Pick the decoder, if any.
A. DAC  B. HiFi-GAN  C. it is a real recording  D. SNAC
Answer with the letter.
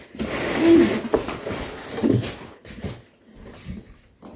C